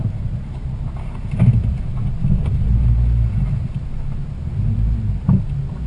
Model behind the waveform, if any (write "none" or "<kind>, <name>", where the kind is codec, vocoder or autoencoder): none